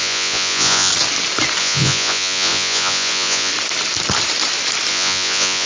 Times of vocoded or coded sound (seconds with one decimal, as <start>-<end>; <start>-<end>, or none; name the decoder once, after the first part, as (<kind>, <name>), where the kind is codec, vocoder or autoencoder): 0.0-0.9 (vocoder, Vocos); 1.6-3.5; 4.9-5.7